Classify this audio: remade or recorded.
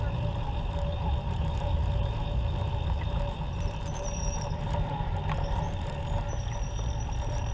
remade